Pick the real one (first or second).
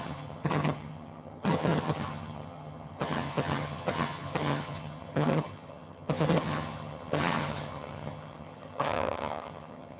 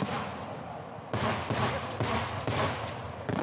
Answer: second